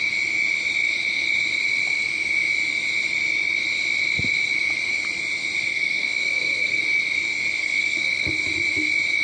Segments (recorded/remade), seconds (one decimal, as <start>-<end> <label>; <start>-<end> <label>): 0.0-5.7 recorded; 5.7-6.8 remade; 6.8-7.6 recorded; 7.6-8.3 remade; 8.3-9.2 recorded